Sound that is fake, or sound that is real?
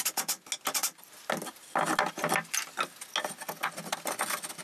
real